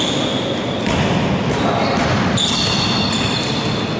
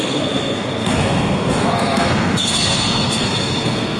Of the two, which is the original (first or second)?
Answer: first